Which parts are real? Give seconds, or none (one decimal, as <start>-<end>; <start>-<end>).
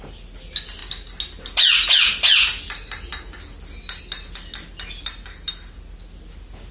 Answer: 0.0-6.7